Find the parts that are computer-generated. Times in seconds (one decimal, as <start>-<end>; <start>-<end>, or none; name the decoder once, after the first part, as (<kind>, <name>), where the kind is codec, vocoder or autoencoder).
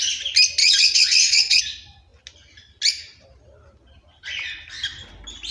0.6-1.6 (vocoder, WaveNeXt)